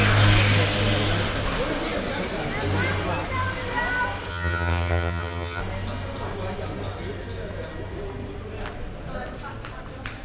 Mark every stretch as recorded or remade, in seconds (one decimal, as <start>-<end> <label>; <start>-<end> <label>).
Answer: 0.0-4.3 recorded; 4.3-5.6 remade; 5.6-10.2 recorded